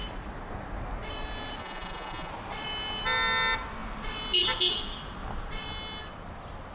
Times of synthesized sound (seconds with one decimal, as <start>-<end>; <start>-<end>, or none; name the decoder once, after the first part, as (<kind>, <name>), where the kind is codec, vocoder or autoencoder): 1.6-2.3 (vocoder, Vocos)